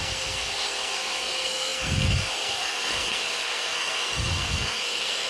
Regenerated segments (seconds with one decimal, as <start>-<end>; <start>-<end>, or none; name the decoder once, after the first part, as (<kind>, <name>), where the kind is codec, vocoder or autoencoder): 0.0-5.3 (codec, SNAC)